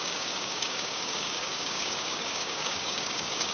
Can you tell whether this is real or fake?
fake